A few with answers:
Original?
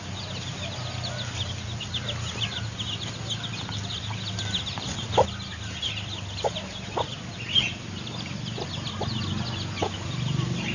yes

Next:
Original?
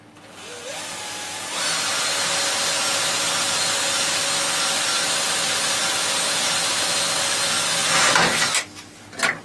yes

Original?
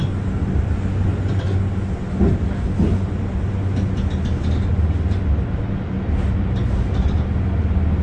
yes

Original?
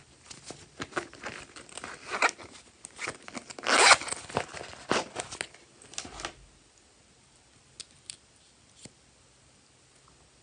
yes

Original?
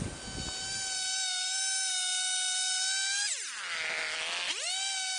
yes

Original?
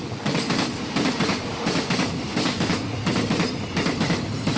yes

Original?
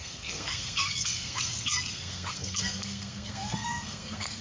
no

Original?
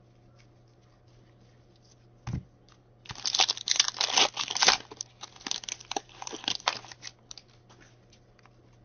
yes